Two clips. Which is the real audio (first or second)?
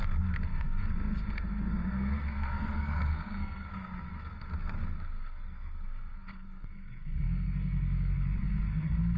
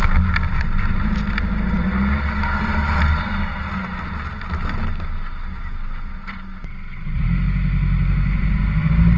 second